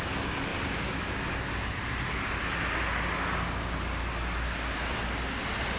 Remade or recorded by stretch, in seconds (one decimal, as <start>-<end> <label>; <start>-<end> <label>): 0.0-5.8 recorded